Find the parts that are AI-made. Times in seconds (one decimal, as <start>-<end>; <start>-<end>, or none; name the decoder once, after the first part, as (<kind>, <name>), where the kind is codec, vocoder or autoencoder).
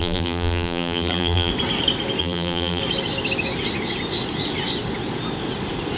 0.0-1.5 (vocoder, BigVGAN v2); 2.2-2.8